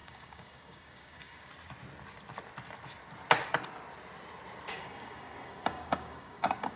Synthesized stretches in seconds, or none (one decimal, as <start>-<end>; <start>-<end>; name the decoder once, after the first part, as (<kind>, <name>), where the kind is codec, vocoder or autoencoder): 0.0-1.5 (codec, DAC); 4.7-6.8